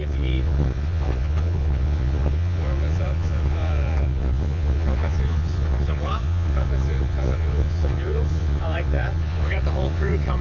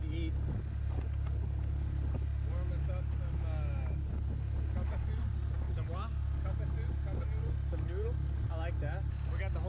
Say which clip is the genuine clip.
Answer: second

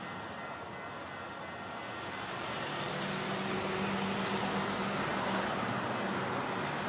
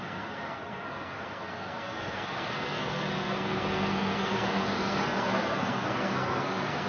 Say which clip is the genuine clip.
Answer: first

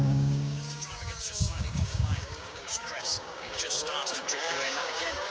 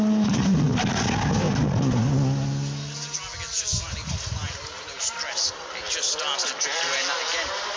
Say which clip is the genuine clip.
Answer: second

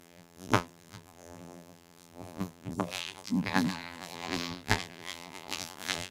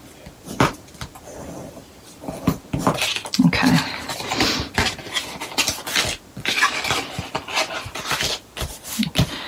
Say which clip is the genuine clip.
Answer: second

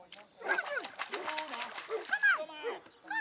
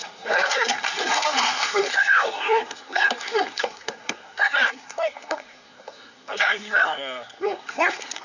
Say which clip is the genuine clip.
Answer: first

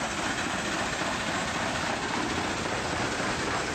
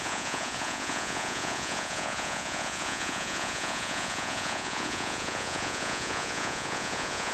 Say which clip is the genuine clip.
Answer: first